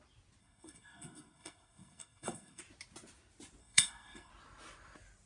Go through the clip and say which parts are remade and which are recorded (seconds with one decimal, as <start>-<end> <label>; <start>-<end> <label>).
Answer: 0.0-0.4 recorded; 0.4-2.6 remade; 2.6-3.6 recorded; 3.6-4.3 remade; 4.3-5.3 recorded